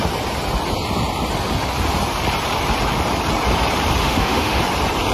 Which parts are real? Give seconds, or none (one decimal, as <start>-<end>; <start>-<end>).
0.0-4.0; 4.6-5.1